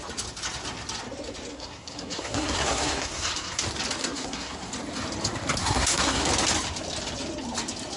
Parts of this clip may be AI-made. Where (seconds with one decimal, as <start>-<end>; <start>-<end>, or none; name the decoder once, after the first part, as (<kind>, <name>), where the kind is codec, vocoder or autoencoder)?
1.5-3.6 (codec, SNAC); 4.0-4.7; 5.6-6.3